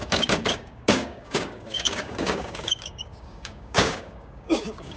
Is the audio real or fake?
fake